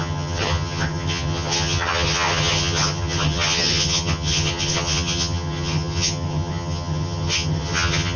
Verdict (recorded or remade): remade